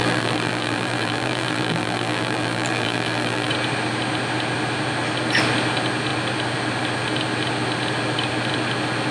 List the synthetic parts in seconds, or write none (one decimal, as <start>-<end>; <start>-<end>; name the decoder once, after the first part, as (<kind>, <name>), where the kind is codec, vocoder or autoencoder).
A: 0.0-3.5 (vocoder, BigVGAN v2)